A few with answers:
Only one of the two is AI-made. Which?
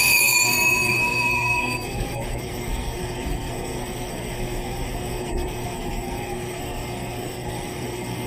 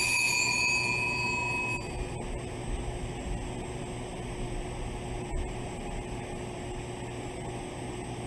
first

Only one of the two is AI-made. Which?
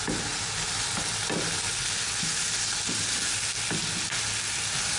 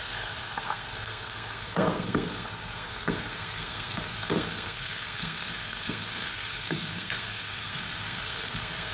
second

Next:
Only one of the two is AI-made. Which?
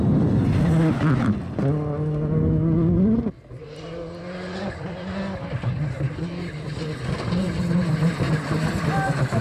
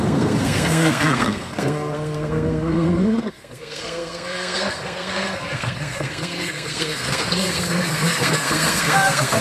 second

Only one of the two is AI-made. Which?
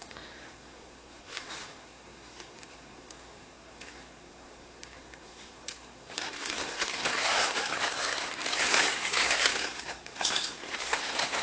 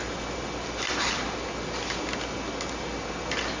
first